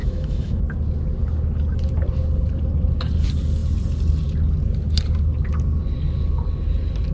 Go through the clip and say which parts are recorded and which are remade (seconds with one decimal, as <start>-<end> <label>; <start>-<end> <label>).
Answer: 0.0-0.6 remade; 0.6-7.1 recorded